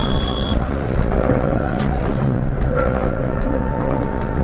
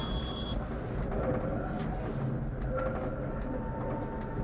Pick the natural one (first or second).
second